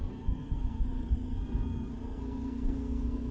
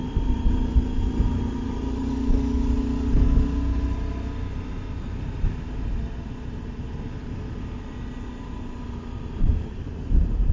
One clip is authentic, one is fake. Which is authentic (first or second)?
second